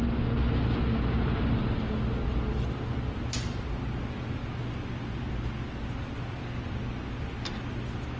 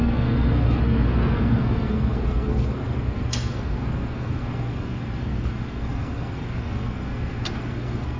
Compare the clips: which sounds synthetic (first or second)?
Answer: second